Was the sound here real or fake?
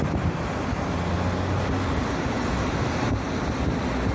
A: real